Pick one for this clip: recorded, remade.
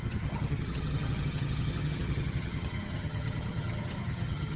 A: remade